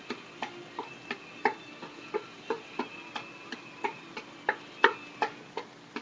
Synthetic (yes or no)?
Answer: no